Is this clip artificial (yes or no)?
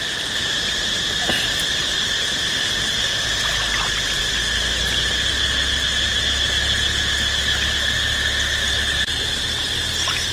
no